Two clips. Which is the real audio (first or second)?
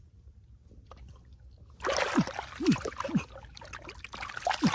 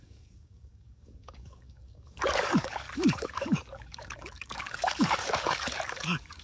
first